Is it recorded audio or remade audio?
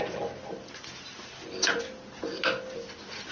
recorded